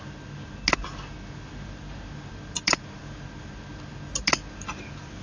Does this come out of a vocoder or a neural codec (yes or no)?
no